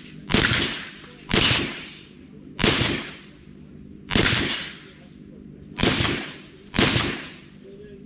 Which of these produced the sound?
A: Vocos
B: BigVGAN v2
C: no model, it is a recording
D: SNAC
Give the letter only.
C